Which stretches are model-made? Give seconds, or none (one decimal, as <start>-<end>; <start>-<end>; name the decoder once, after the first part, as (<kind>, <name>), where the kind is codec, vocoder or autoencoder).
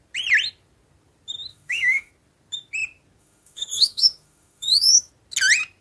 1.5-2.1 (autoencoder, DAC-VAE); 3.2-5.1